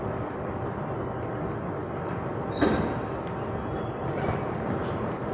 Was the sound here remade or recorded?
recorded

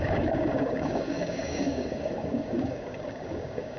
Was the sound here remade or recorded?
remade